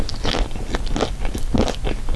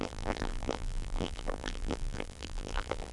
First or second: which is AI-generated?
second